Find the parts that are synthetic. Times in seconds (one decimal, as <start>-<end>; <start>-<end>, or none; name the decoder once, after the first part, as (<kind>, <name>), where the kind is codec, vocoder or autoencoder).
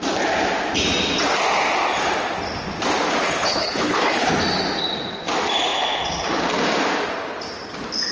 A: 3.2-4.3 (codec, HILCodec)